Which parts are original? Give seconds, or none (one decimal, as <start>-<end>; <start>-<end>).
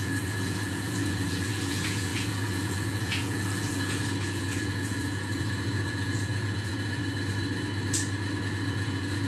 7.0-8.4